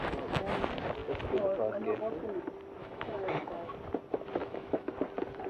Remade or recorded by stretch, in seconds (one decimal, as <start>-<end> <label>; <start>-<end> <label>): 0.0-2.8 recorded; 2.8-3.7 remade; 3.7-4.4 recorded; 4.4-4.9 remade; 4.9-5.5 recorded